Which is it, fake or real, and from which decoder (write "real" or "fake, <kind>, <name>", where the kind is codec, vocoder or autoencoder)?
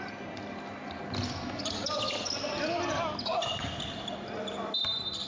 real